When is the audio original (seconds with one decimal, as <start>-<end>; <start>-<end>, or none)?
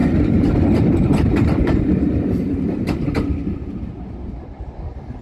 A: 3.0-3.4; 3.9-5.2